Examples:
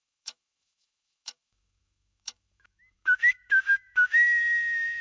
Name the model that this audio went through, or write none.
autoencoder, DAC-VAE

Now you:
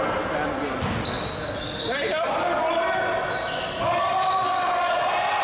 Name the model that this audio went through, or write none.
none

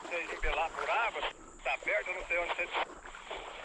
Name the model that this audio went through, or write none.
none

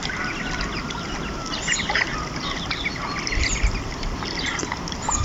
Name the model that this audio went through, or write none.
none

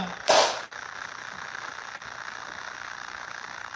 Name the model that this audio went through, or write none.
none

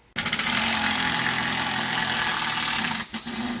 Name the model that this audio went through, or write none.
none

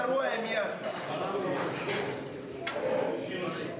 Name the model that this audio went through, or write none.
none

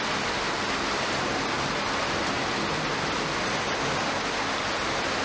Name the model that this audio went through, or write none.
none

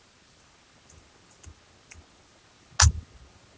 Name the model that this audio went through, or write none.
none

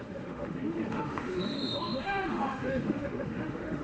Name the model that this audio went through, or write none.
autoencoder, DAC-VAE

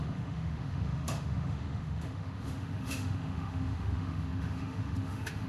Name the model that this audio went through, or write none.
autoencoder, DAC-VAE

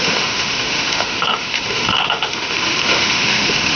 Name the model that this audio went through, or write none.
autoencoder, DAC-VAE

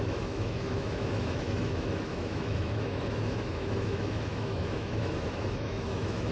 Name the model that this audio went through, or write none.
autoencoder, DAC-VAE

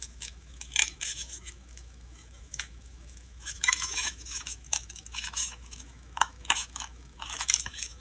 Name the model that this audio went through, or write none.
autoencoder, DAC-VAE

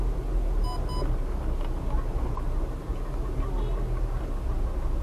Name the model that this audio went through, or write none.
none